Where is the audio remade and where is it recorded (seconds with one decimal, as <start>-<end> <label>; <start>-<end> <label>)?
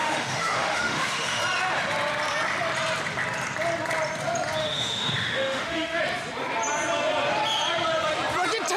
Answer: 0.0-1.4 remade; 1.4-4.6 recorded; 4.6-6.0 remade; 6.0-8.8 recorded